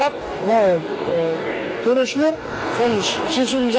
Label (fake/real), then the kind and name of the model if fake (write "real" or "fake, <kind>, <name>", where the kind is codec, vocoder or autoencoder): fake, codec, DAC